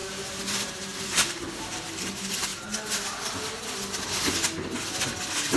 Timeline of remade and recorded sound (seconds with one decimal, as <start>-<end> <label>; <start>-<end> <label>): 0.0-2.5 remade; 2.5-5.6 recorded